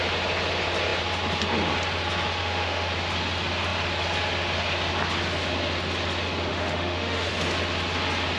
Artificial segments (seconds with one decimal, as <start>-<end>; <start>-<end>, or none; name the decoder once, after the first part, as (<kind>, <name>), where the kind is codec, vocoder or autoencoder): 2.4-2.9 (autoencoder, DAC-VAE); 6.5-7.3